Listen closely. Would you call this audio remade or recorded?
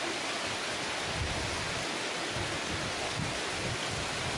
recorded